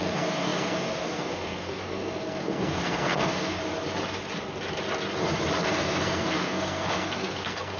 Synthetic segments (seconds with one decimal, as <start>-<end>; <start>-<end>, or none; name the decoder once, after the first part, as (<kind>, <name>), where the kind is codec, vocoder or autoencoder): 0.0-3.6 (codec, SNAC); 5.6-7.8